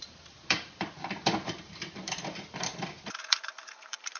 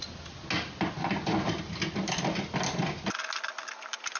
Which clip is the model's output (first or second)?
first